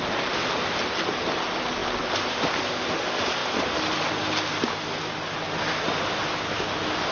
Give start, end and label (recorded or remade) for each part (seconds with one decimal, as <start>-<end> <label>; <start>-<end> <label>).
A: 0.0-7.1 recorded